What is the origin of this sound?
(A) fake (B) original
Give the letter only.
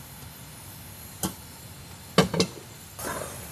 B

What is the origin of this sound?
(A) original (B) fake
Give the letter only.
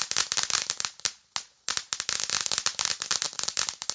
A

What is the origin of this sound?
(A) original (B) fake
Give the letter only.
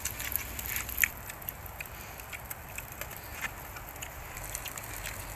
A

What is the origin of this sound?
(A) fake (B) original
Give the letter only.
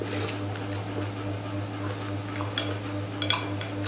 B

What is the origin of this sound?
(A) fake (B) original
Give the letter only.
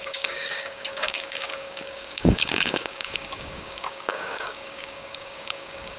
A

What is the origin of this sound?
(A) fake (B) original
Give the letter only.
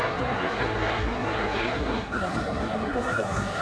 A